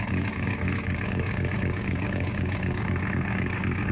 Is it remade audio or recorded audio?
remade